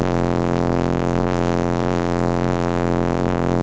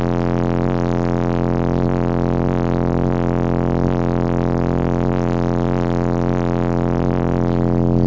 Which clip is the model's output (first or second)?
first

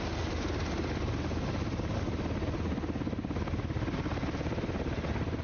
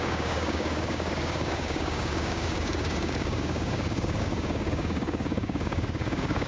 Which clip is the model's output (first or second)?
second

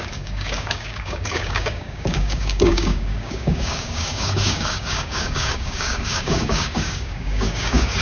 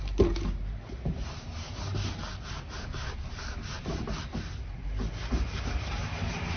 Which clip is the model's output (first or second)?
first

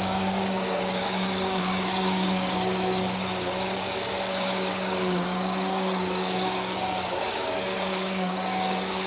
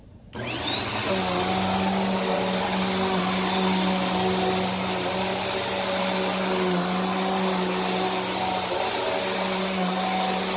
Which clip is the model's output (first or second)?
first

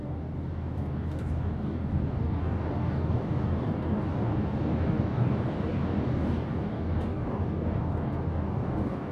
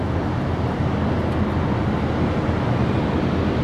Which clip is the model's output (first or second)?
first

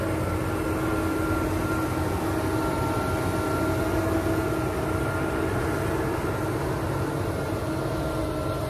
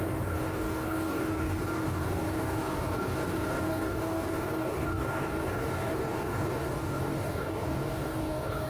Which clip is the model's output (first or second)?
second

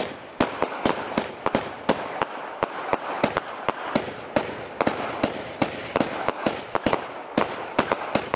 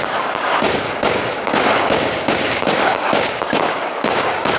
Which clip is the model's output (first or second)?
second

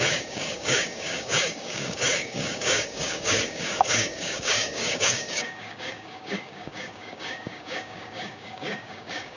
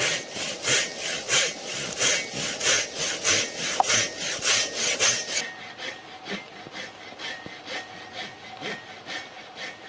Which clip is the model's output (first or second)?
first